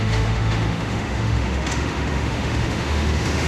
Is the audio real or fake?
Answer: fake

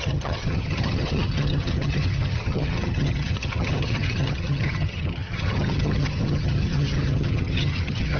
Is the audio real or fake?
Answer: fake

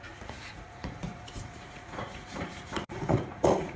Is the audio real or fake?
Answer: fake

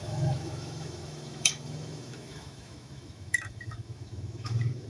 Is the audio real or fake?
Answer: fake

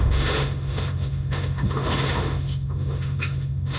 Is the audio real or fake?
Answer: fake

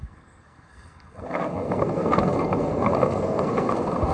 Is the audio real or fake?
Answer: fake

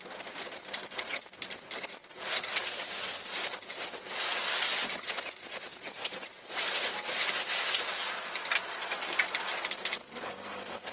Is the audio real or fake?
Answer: real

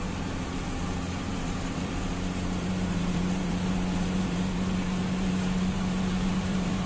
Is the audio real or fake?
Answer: fake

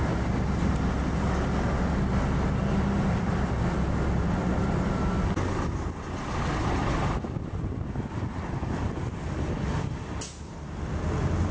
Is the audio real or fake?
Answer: real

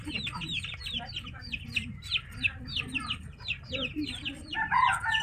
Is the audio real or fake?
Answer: real